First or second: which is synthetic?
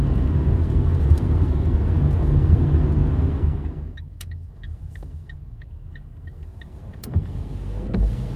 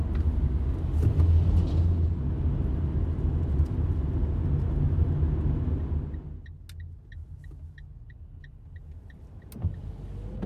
first